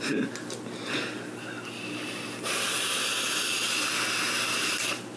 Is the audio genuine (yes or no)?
yes